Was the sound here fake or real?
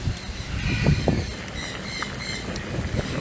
real